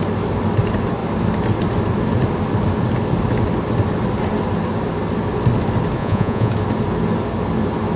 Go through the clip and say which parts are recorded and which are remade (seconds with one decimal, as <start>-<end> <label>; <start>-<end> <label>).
0.0-6.0 recorded; 6.0-6.5 remade; 6.5-8.0 recorded